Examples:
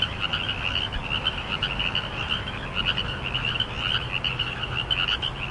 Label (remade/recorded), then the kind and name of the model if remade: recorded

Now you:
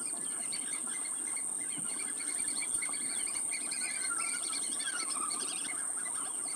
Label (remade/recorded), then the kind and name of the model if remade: recorded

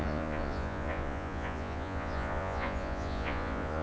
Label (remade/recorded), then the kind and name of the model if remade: remade, vocoder, Vocos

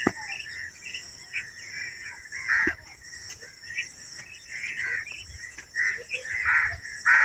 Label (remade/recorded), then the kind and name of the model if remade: remade, vocoder, Vocos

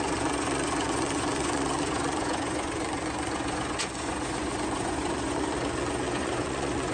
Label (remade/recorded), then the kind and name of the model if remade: remade, vocoder, Vocos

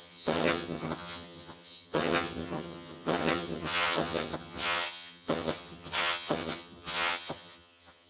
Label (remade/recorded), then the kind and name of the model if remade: remade, vocoder, HiFi-GAN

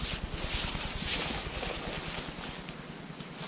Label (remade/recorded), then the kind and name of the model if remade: recorded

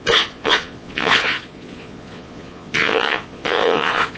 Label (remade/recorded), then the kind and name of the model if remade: remade, vocoder, Vocos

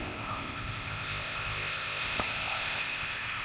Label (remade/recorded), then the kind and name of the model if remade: remade, codec, ZipCodec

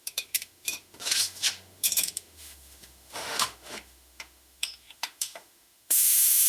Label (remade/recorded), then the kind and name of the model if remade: remade, autoencoder, DAC-VAE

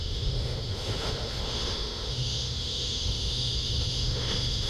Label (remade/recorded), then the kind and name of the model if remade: remade, autoencoder, DAC-VAE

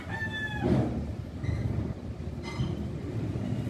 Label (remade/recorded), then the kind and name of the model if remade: recorded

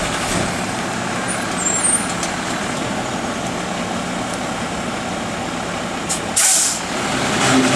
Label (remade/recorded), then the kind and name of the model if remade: recorded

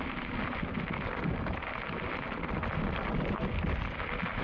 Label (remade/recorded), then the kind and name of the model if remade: recorded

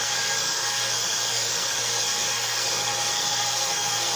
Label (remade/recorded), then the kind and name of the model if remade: remade, codec, SNAC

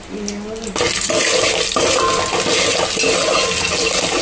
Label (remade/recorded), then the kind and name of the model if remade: recorded